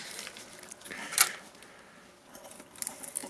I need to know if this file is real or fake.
real